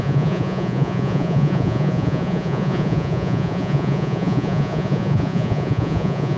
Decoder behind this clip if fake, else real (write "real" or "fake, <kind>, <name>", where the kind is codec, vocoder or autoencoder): fake, vocoder, Vocos